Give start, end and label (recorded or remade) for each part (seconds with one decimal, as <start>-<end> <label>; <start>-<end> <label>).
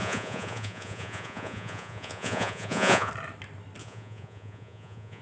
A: 0.0-3.1 remade; 3.1-3.8 recorded; 3.8-5.2 remade